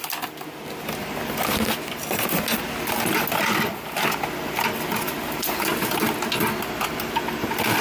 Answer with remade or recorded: recorded